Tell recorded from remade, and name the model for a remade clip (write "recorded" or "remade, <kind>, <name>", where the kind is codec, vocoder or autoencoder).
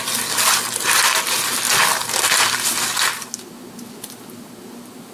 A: recorded